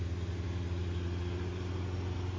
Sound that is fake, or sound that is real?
real